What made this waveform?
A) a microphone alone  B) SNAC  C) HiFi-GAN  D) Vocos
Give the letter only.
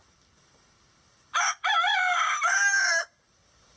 A